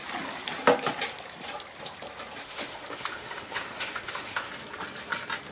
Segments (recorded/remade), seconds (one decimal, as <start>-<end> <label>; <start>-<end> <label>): 0.0-2.4 recorded; 2.4-4.5 remade; 4.5-5.5 recorded